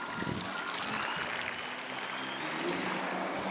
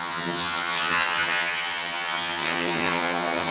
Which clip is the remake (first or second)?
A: second